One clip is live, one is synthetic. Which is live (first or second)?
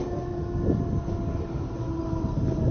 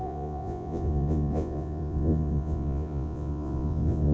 first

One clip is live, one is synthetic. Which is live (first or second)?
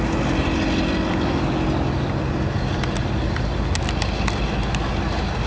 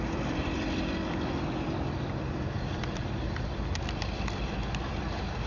first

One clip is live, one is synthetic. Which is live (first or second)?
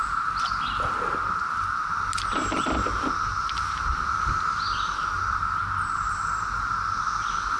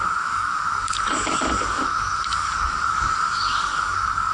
first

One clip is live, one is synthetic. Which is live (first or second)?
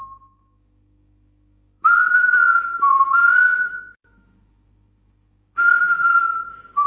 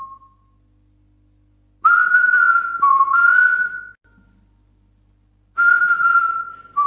second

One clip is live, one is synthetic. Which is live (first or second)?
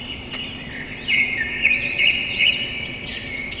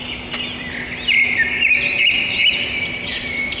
second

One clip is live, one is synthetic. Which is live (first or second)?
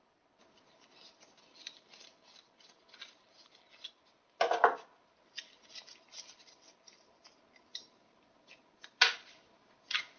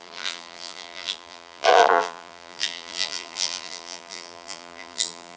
first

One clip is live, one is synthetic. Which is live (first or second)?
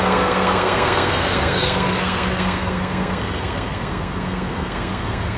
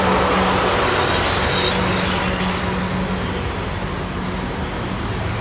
second